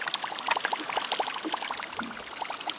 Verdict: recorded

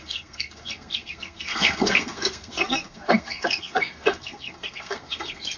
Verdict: remade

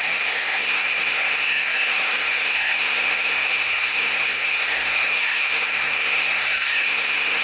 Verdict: remade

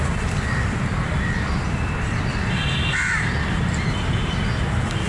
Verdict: recorded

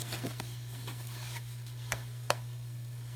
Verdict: remade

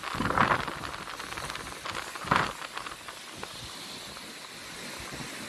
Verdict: recorded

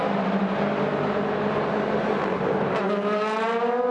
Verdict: recorded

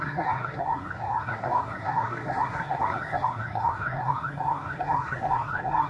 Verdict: remade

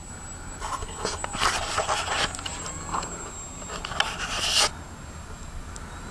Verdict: recorded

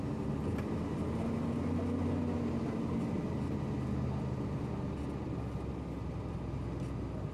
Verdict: recorded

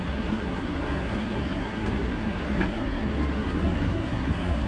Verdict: remade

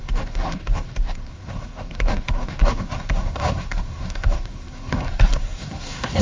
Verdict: remade